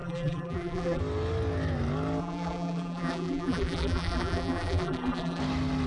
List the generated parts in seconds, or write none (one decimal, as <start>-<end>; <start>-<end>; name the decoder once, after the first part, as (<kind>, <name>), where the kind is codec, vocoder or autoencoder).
0.0-1.0 (vocoder, BigVGAN v2); 2.2-5.4

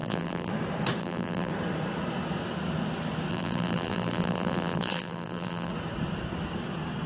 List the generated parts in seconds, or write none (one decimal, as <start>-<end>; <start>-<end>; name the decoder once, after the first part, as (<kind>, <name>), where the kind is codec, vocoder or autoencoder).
0.0-0.5 (vocoder, BigVGAN v2); 1.0-1.5; 3.3-5.7

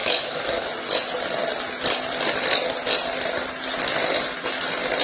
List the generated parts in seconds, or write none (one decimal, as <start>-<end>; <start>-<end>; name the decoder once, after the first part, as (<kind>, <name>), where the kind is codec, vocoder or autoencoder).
0.0-0.7 (autoencoder, DAC-VAE)

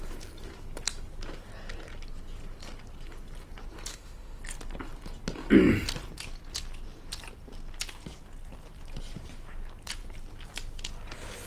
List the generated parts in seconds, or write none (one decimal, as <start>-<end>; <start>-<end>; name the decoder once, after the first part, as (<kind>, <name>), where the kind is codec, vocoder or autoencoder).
3.9-4.4 (autoencoder, DAC-VAE)